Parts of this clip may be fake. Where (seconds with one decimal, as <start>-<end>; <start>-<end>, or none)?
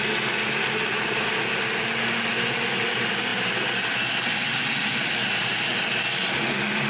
none